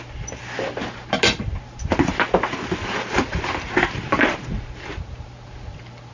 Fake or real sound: real